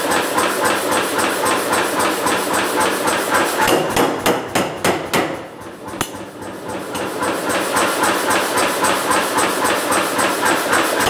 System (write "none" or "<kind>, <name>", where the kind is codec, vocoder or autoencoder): none